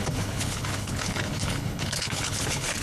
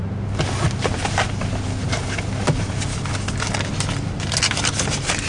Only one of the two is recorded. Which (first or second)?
second